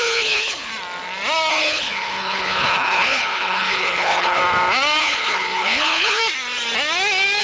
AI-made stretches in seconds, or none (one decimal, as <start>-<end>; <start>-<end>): 0.0-0.7; 1.5-4.4; 5.0-6.2